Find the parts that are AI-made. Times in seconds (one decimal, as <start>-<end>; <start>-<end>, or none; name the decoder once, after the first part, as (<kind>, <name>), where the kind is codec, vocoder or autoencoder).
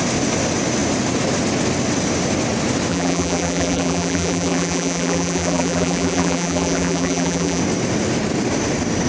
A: 2.9-7.6 (vocoder, BigVGAN v2)